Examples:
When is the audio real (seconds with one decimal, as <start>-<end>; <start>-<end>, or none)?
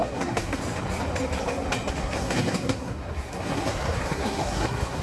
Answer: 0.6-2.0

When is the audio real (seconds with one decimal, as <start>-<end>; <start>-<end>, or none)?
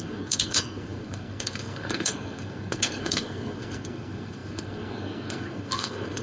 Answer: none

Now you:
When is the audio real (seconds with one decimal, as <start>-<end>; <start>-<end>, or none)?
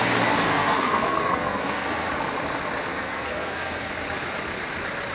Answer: 0.0-0.5; 2.1-2.9; 3.9-5.1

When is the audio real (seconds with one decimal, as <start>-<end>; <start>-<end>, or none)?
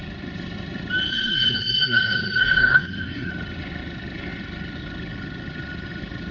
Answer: 0.0-1.1; 3.3-6.3